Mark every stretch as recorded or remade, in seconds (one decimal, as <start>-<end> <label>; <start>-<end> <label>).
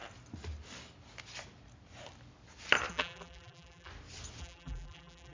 0.0-2.9 recorded; 2.9-3.9 remade; 3.9-4.4 recorded; 4.4-5.3 remade